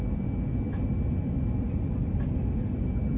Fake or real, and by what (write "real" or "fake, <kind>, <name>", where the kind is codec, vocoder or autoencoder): real